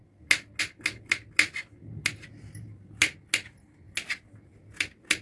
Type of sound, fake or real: real